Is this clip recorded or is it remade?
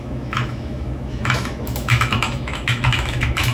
remade